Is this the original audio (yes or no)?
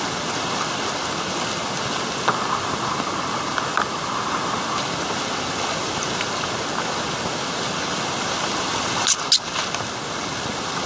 yes